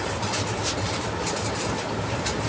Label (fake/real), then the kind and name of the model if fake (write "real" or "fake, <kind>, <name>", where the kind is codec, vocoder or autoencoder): real